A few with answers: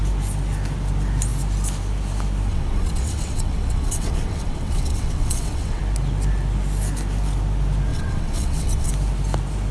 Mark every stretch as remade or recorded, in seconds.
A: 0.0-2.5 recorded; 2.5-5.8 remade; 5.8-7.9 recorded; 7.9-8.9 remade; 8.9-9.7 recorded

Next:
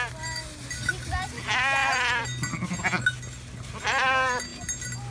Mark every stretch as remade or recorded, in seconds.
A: 0.0-5.1 recorded

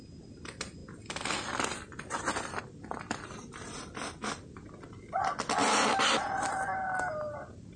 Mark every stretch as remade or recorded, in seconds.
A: 0.0-7.8 recorded

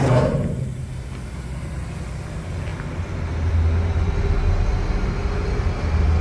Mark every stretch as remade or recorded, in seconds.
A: 0.0-6.2 recorded

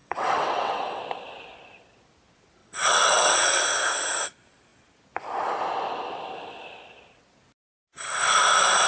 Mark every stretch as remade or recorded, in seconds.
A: 0.0-1.0 remade; 1.0-2.6 recorded; 2.6-3.6 remade; 3.6-8.9 recorded

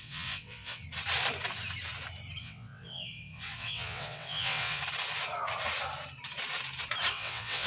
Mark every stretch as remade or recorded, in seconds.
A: 0.0-0.8 remade; 0.8-2.4 recorded; 2.4-4.8 remade; 4.8-7.1 recorded; 7.1-7.7 remade